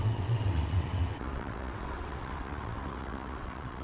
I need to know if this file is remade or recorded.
remade